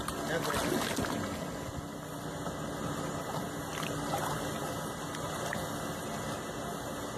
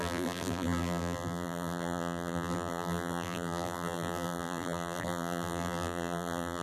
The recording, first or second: first